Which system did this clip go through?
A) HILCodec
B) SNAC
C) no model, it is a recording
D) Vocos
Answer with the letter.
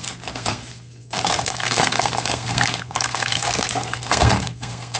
B